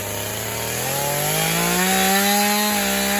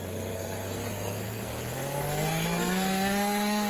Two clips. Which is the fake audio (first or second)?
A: second